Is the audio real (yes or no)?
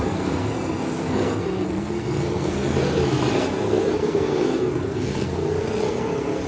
no